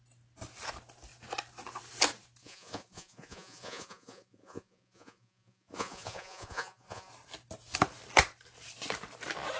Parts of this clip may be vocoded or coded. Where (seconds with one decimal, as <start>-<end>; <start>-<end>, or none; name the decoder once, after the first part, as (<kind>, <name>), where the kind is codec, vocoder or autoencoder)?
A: 2.4-7.1 (vocoder, Vocos)